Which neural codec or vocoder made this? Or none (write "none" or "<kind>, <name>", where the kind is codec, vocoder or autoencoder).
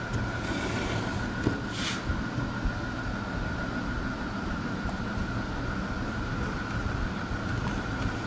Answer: none